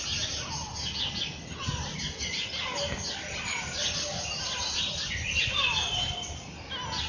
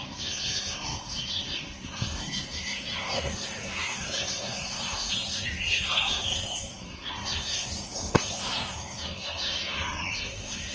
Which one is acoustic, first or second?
first